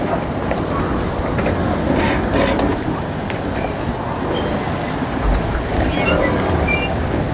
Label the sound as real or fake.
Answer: real